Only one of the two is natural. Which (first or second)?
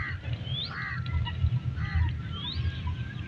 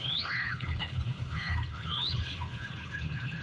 first